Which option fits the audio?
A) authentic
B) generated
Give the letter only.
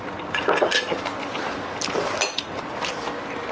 A